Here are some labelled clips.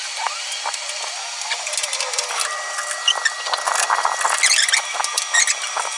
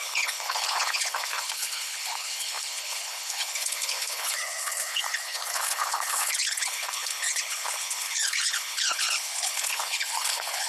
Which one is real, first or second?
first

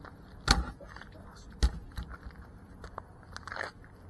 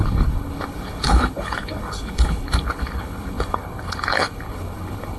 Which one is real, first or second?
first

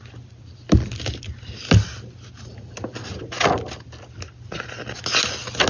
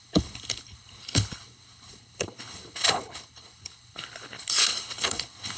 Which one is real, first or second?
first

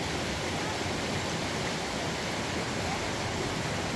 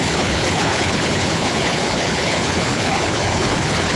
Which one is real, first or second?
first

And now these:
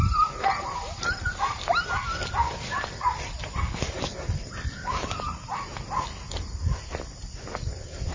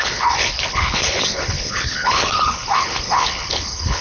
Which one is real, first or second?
first